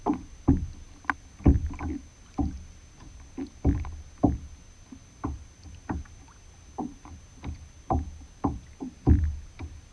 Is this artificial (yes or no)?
no